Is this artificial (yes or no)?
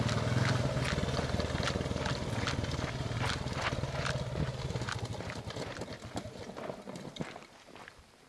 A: no